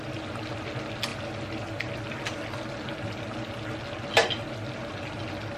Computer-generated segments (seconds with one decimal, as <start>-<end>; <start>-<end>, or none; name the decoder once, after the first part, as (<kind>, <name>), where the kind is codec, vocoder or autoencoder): none